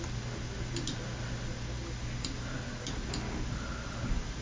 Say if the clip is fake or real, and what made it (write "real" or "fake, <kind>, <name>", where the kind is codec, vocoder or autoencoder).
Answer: real